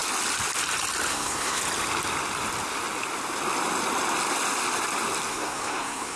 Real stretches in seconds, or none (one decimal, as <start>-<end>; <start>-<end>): 0.0-1.1; 1.6-5.3